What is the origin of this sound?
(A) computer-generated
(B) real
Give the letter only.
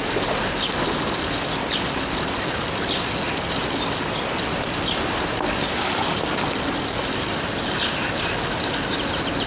B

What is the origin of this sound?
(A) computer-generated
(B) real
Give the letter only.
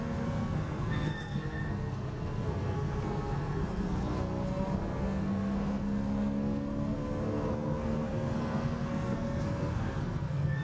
A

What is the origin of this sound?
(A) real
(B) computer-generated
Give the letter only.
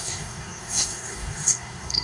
B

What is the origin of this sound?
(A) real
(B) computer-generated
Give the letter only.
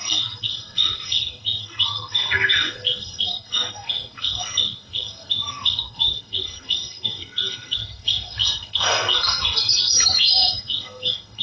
B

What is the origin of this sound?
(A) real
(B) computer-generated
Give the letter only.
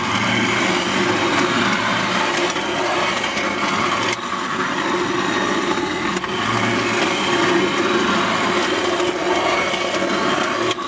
A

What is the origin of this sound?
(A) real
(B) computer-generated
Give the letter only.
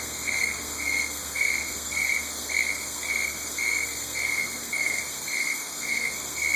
B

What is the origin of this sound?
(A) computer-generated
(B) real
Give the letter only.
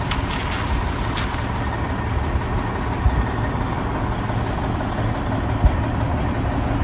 B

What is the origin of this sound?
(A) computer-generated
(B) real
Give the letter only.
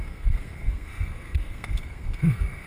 A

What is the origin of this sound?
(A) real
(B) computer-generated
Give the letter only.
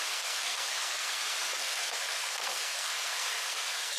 B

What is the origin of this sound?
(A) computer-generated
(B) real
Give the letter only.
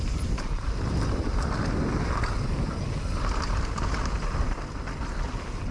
B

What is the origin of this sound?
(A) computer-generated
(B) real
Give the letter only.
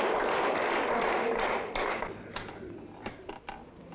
B